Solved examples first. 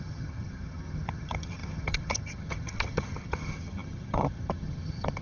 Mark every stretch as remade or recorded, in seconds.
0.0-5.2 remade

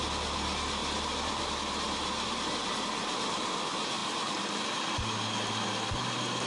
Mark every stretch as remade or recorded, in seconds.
0.0-0.8 recorded; 0.8-1.5 remade; 1.5-6.5 recorded

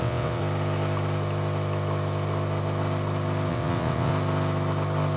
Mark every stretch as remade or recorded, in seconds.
0.0-0.4 remade; 0.4-3.5 recorded; 3.5-4.1 remade; 4.1-5.2 recorded

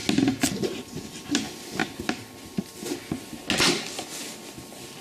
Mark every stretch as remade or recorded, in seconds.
0.0-5.0 recorded

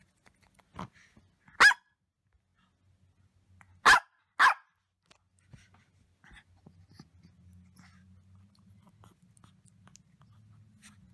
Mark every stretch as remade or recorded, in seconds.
0.0-11.1 recorded

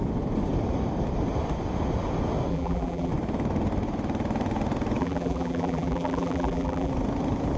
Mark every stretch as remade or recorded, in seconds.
0.0-2.5 recorded; 2.5-3.1 remade; 3.1-5.0 recorded; 5.0-6.9 remade; 6.9-7.6 recorded

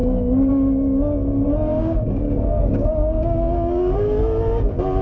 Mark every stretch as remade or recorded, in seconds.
0.0-0.5 remade; 0.5-1.7 recorded; 1.7-4.2 remade; 4.2-5.0 recorded